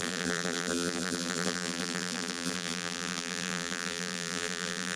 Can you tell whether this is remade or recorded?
remade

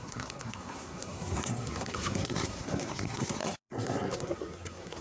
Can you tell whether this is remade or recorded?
remade